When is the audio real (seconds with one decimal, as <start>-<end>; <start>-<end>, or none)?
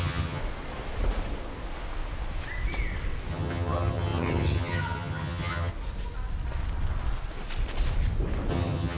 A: 0.4-3.3; 5.7-8.5